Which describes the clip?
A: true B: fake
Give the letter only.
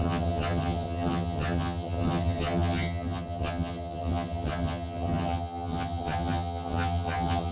B